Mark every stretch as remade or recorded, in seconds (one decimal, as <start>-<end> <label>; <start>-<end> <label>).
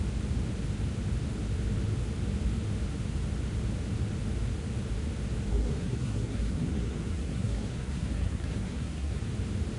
0.0-5.5 recorded; 5.5-9.2 remade; 9.2-9.8 recorded